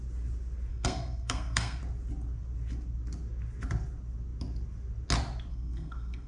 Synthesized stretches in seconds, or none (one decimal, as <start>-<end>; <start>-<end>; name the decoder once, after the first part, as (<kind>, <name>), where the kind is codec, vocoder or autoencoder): 0.7-1.8 (codec, SNAC); 5.5-6.3